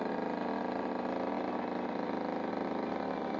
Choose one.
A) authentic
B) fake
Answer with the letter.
A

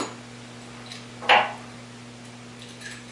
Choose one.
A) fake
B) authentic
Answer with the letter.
B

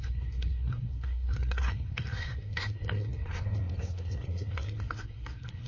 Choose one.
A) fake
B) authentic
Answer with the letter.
A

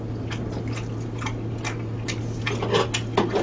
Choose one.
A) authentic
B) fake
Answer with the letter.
A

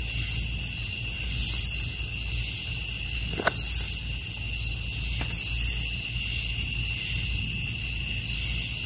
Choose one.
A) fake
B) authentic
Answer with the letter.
B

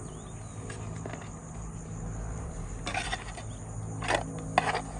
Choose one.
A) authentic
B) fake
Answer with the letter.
A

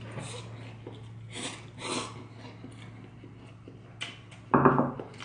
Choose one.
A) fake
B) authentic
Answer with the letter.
B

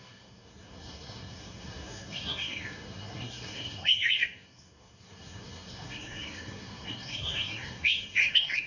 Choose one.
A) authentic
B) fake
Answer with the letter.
B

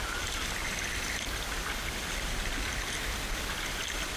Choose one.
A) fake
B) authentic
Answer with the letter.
B